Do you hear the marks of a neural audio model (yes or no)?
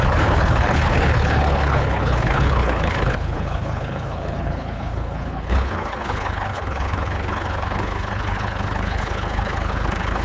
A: yes